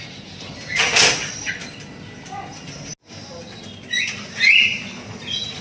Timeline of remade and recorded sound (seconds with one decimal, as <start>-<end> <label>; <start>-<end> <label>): 0.0-5.6 recorded